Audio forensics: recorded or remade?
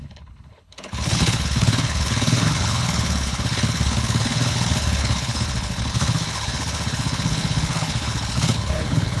remade